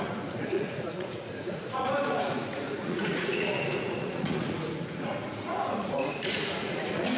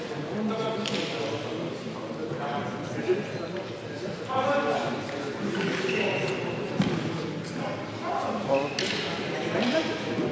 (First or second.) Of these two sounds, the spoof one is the first